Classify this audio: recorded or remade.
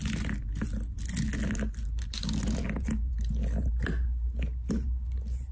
recorded